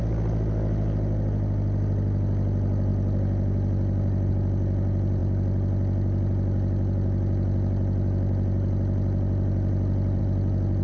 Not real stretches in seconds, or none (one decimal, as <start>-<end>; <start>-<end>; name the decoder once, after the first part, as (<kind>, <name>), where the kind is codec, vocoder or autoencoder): none